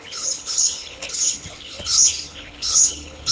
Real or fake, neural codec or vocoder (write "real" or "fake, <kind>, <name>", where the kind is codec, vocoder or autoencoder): fake, codec, HILCodec